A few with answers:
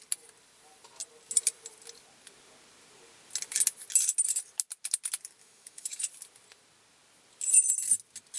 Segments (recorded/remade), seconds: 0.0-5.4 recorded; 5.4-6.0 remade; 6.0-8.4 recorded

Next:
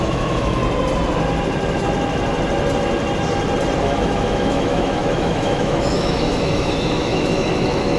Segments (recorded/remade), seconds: 0.0-0.6 remade; 0.6-3.8 recorded; 3.8-8.0 remade